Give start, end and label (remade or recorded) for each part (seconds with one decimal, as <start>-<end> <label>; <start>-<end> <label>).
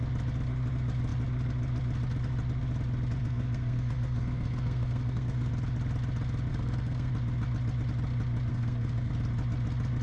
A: 0.0-3.2 recorded; 3.2-5.5 remade; 5.5-6.5 recorded; 6.5-7.1 remade; 7.1-8.5 recorded; 8.5-9.1 remade; 9.1-10.0 recorded